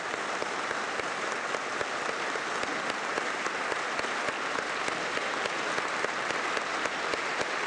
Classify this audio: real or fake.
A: real